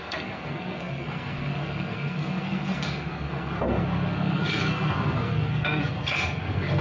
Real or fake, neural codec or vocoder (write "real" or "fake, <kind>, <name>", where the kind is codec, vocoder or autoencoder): fake, codec, SNAC